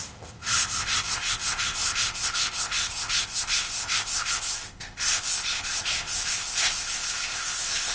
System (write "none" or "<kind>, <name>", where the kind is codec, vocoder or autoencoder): codec, ZipCodec